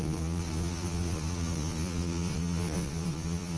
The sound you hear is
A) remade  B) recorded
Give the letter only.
A